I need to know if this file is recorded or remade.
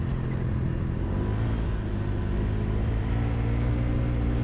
recorded